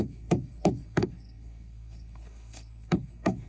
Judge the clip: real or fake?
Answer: fake